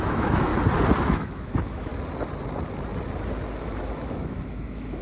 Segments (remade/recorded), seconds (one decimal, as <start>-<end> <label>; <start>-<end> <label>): 0.0-0.5 remade; 0.5-1.0 recorded; 1.0-1.9 remade; 1.9-3.6 recorded; 3.6-5.0 remade